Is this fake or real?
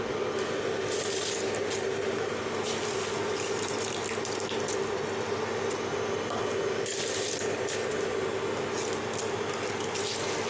real